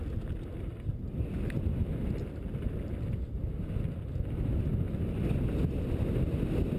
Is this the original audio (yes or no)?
yes